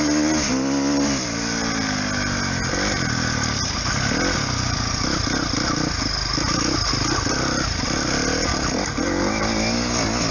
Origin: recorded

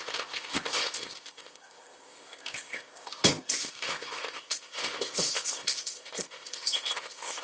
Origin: remade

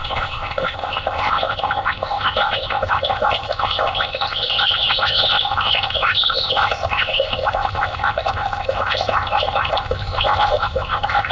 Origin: remade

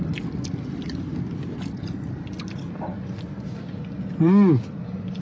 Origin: recorded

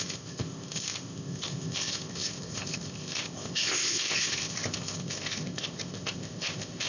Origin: remade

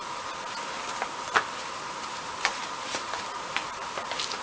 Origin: recorded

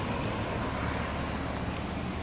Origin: recorded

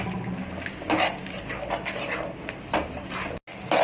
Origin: recorded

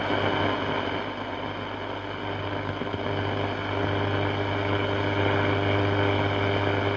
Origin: recorded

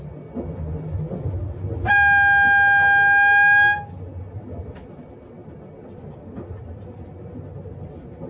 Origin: recorded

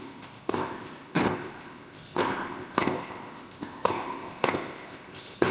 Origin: remade